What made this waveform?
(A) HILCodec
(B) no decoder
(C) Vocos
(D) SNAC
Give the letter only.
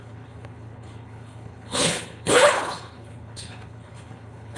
A